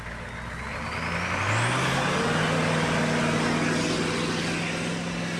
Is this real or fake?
real